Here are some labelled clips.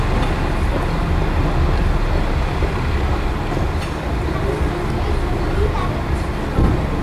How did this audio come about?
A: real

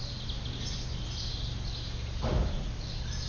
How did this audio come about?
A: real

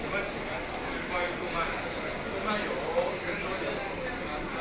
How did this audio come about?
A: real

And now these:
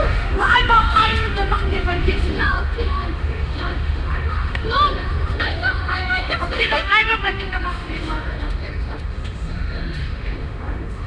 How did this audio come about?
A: fake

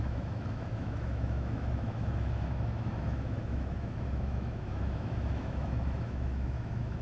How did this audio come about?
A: fake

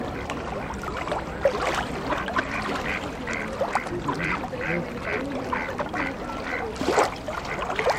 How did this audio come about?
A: real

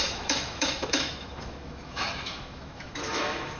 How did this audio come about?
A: fake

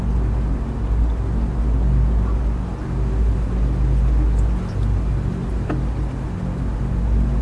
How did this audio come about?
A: real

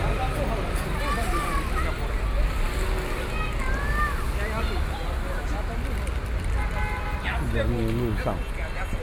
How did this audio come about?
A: real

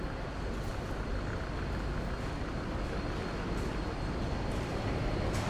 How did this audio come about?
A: real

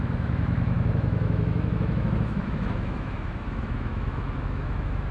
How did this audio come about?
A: fake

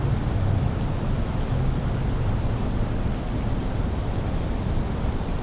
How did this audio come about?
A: real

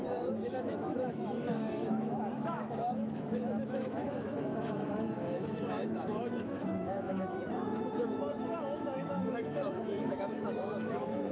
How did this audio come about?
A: fake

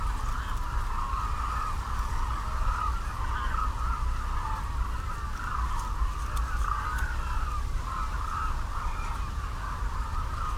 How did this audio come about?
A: real